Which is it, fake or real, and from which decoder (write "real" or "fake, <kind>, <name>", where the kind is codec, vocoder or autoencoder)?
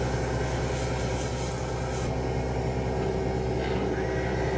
real